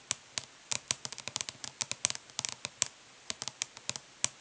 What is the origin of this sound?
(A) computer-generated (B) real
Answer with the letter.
B